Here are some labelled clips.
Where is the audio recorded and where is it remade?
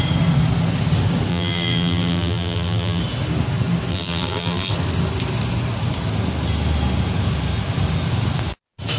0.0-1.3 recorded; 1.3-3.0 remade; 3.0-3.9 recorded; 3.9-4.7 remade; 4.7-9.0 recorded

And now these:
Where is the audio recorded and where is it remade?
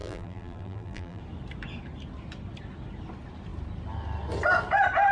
0.0-1.2 remade; 1.2-5.1 recorded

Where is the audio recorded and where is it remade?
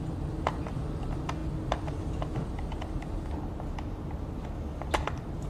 0.0-5.5 recorded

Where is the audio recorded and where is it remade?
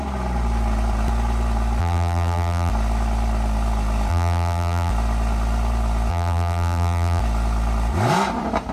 0.0-1.8 recorded; 1.8-2.7 remade; 2.7-4.1 recorded; 4.1-4.9 remade; 4.9-6.1 recorded; 6.1-7.2 remade; 7.2-8.7 recorded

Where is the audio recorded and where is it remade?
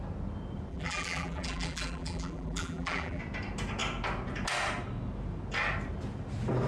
0.0-0.7 recorded; 0.7-3.2 remade; 3.2-6.7 recorded